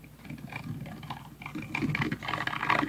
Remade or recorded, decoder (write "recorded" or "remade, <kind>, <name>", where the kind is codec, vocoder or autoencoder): recorded